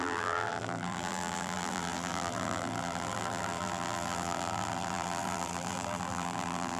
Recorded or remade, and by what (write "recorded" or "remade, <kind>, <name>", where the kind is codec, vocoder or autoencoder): remade, vocoder, BigVGAN v2